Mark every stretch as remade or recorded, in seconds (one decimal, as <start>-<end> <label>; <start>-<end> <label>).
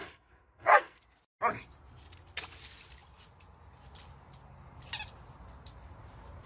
0.0-1.0 remade; 1.0-6.5 recorded